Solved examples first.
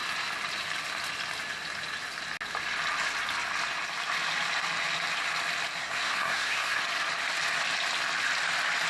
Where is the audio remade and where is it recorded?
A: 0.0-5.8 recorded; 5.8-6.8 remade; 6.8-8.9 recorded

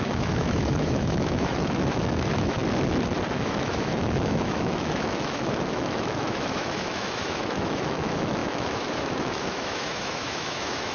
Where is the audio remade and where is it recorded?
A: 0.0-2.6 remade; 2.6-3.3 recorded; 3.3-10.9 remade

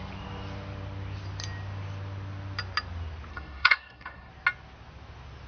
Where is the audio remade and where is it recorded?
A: 0.0-3.3 recorded; 3.3-4.3 remade; 4.3-5.5 recorded